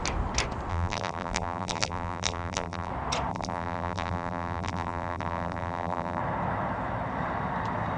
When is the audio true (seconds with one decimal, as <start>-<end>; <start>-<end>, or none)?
0.0-0.7; 2.9-3.3; 6.2-8.0